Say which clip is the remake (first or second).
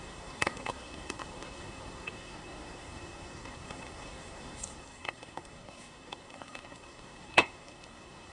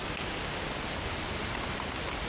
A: first